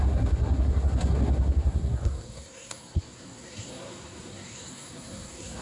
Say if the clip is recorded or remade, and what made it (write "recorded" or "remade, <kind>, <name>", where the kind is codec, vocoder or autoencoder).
remade, codec, SNAC